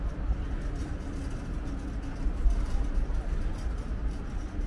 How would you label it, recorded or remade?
recorded